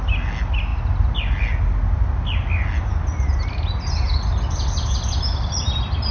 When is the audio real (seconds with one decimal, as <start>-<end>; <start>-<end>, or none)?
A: 0.0-6.1